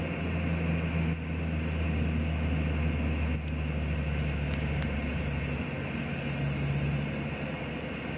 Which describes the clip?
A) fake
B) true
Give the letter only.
B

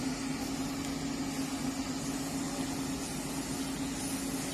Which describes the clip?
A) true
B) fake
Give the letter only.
A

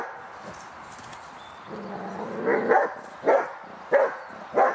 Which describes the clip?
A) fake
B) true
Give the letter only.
A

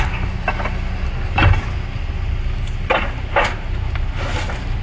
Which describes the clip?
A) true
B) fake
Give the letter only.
A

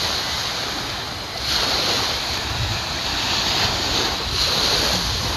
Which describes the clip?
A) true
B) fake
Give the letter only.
A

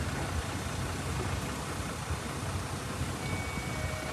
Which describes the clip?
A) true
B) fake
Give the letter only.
A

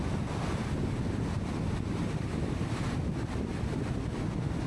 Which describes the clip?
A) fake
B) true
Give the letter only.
B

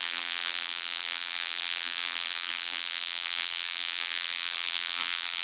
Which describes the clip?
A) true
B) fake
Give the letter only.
B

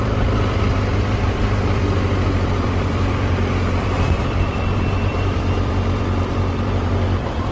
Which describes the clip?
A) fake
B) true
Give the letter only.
A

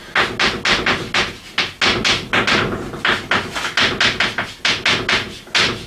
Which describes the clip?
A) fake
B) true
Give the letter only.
B